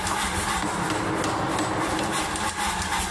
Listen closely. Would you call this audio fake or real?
real